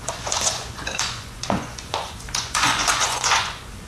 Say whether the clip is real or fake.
fake